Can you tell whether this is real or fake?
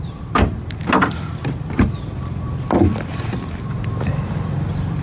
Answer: fake